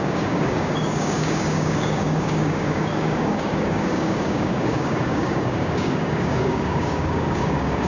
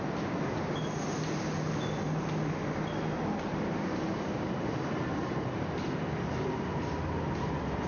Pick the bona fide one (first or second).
second